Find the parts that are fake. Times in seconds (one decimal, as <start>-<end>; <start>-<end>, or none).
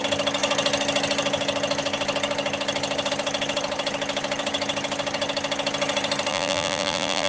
6.3-7.3